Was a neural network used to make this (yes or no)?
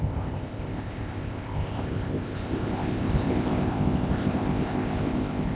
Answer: yes